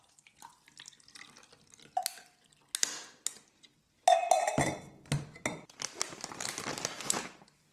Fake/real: real